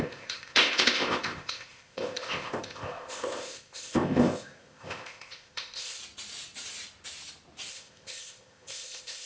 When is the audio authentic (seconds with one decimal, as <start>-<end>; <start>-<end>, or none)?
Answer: 6.0-7.7